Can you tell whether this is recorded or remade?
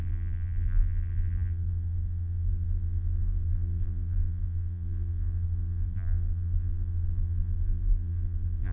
remade